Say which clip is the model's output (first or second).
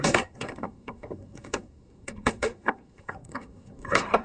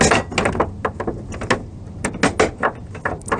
first